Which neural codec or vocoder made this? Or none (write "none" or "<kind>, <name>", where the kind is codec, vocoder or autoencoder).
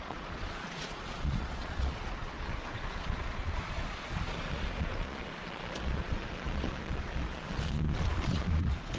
vocoder, Vocos